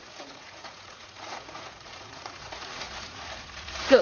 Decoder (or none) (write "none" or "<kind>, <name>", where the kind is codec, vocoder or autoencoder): vocoder, Vocos